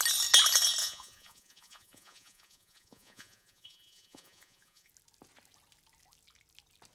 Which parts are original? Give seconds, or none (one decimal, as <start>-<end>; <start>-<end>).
0.0-0.8; 4.9-6.9